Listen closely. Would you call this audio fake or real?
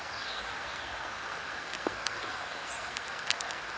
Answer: fake